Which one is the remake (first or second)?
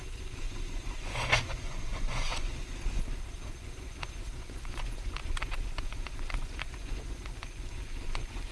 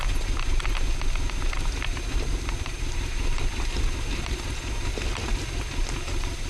first